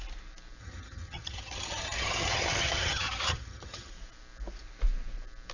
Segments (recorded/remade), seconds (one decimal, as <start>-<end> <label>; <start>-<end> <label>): 0.0-0.6 recorded; 0.6-3.9 remade; 3.9-5.5 recorded